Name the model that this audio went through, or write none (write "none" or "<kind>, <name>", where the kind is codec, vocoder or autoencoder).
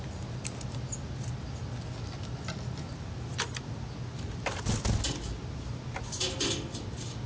none